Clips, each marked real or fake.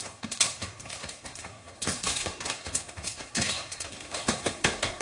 fake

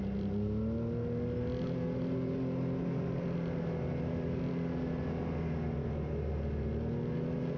real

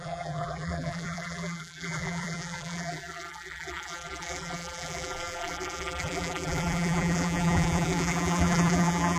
fake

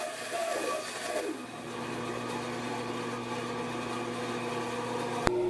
real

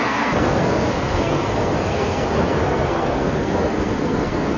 fake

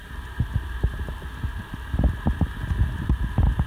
real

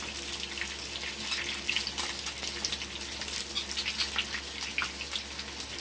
real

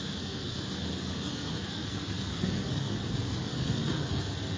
fake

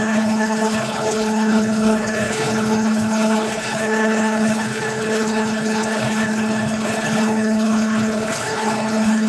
fake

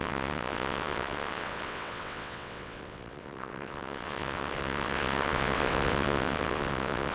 fake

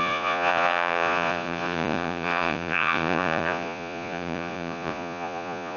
fake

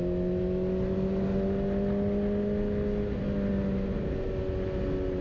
real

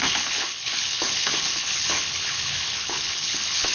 fake